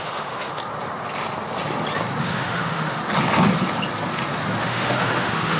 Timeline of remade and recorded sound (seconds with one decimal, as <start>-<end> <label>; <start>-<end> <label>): 0.0-0.6 remade; 0.6-2.2 recorded; 2.2-3.0 remade; 3.0-4.6 recorded; 4.6-5.6 remade